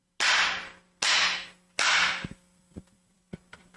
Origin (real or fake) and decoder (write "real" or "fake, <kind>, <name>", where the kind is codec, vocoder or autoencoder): real